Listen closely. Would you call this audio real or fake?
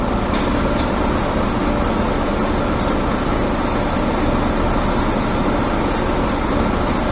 real